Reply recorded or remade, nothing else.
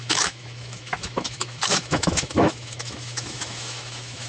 remade